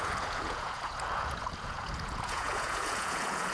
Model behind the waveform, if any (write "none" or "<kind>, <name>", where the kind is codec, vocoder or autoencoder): vocoder, Vocos